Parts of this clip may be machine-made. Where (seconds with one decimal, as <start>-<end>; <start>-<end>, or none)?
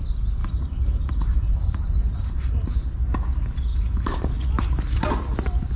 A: 0.4-2.7; 3.7-4.3